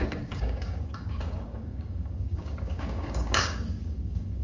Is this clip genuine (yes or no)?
no